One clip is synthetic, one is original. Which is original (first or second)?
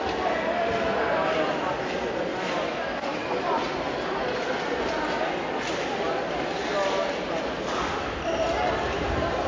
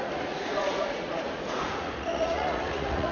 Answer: first